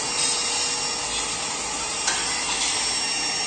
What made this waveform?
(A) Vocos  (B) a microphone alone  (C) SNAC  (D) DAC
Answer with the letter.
B